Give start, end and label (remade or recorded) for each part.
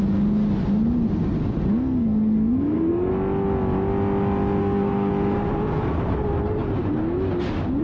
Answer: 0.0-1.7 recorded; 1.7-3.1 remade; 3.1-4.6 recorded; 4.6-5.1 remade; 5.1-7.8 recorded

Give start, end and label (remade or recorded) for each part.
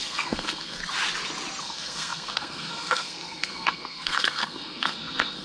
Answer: 0.0-0.8 remade; 0.8-1.6 recorded; 1.6-5.4 remade